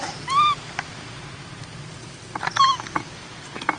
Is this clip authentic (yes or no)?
yes